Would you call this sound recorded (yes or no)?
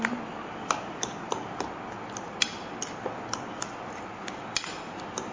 yes